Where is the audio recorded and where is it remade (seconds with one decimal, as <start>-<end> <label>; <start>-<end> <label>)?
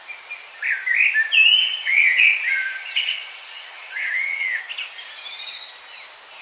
0.0-1.6 recorded; 1.6-4.6 remade; 4.6-6.4 recorded